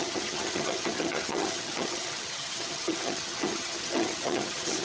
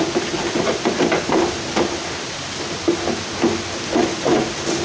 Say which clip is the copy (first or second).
first